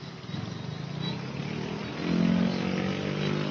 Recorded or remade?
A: recorded